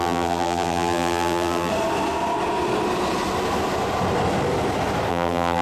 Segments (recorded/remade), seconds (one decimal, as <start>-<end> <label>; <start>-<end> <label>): 0.0-1.7 remade; 1.7-5.1 recorded; 5.1-5.6 remade